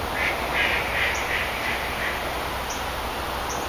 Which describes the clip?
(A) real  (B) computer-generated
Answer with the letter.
A